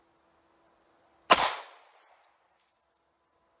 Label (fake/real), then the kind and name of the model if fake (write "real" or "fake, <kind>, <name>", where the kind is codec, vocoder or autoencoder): real